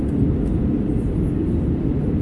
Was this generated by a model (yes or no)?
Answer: no